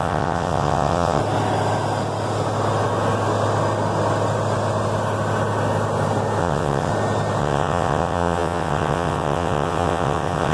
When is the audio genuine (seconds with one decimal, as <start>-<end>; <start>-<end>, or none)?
1.2-6.4; 6.9-7.4